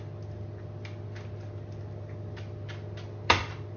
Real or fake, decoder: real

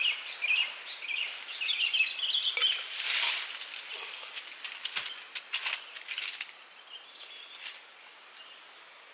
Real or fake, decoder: real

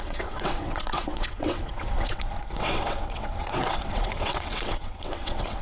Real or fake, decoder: fake, vocoder, WaveNeXt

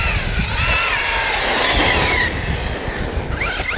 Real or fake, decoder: real